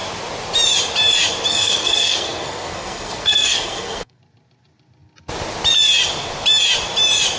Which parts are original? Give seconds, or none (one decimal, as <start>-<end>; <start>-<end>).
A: 0.0-1.5; 4.2-7.4